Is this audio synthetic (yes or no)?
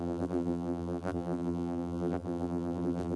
yes